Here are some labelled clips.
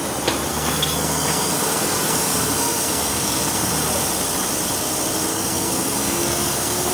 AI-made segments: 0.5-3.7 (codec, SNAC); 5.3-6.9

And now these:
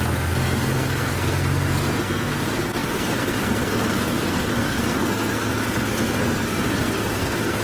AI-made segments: 0.0-7.6 (codec, SNAC)

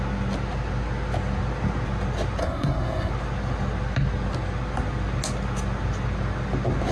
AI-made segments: 2.4-3.1 (codec, SNAC)

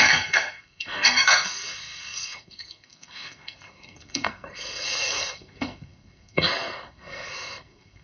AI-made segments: 0.0-8.0 (codec, SNAC)

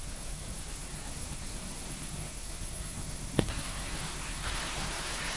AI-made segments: 0.0-5.4 (codec, SNAC)